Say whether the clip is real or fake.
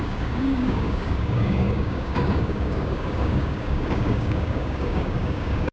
fake